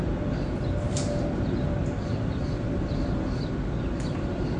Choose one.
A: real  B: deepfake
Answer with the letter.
A